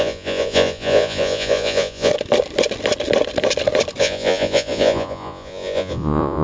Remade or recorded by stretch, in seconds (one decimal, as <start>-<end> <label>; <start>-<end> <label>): 0.0-2.1 remade; 2.1-4.0 recorded; 4.0-6.4 remade